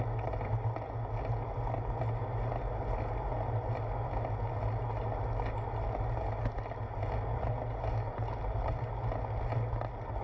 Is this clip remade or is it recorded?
recorded